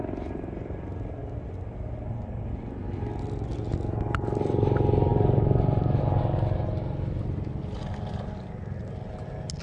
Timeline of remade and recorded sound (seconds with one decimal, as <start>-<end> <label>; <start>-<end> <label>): 0.0-9.6 recorded